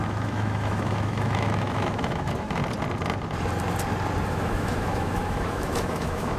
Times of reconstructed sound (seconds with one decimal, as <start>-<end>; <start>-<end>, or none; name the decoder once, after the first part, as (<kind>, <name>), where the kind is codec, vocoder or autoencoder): 0.0-2.6 (autoencoder, DAC-VAE); 4.3-6.4